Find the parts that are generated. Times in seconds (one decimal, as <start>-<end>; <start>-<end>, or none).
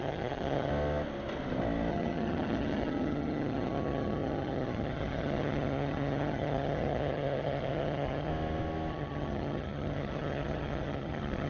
0.0-0.7; 1.9-8.3; 8.9-11.5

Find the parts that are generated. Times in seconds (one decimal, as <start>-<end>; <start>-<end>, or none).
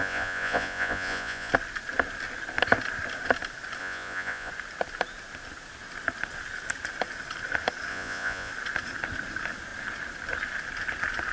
0.0-1.5; 3.8-4.5; 7.9-8.5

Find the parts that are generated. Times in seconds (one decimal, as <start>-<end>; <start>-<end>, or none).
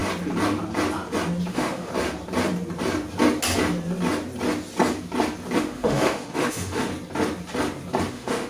1.5-1.9; 5.6-6.9; 8.1-8.5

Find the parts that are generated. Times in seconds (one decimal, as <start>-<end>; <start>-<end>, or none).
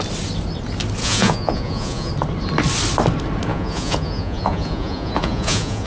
1.0-2.1; 3.5-5.9